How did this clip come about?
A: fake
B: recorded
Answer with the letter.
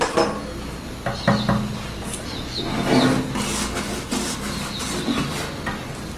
B